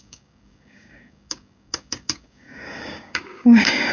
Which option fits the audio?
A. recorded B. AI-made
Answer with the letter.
B